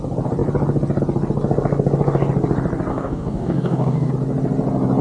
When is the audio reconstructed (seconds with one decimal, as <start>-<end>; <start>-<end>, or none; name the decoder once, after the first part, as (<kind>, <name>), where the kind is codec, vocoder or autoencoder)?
2.9-4.1 (codec, DAC)